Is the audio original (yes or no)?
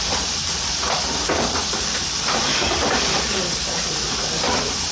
yes